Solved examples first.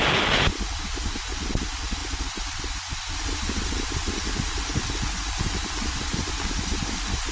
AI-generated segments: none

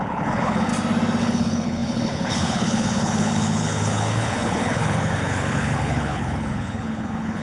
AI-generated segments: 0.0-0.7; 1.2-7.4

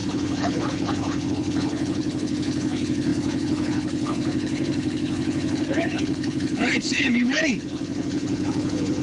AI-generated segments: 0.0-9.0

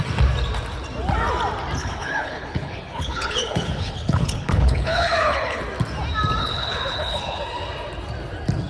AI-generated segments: 1.8-5.6; 6.4-7.4

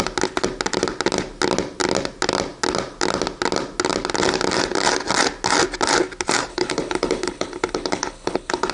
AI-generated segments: 6.5-8.7

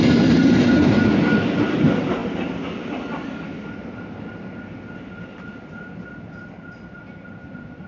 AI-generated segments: none

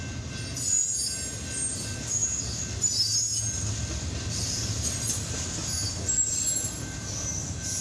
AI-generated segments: none